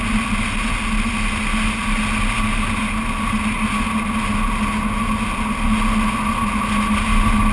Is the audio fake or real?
real